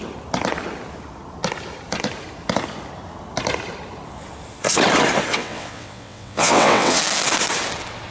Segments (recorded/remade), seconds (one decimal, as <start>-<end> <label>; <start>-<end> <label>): 0.0-5.3 recorded; 5.3-7.0 remade; 7.0-8.1 recorded